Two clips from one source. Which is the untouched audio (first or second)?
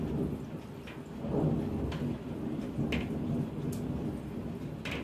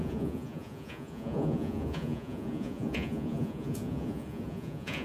first